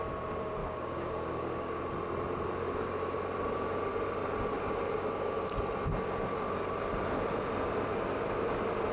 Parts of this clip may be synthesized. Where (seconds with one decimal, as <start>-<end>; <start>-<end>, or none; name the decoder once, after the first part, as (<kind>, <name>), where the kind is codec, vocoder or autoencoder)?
0.6-1.8 (codec, DAC)